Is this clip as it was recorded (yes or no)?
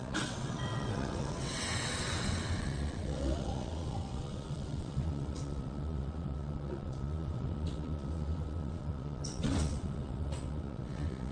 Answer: no